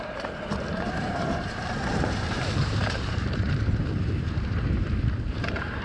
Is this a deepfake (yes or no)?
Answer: yes